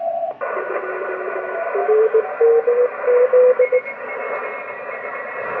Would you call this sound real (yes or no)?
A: yes